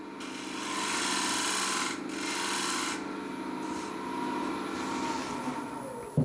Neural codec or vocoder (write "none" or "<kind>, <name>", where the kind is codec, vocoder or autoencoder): none